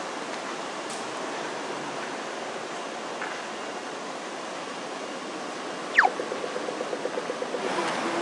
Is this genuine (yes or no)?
yes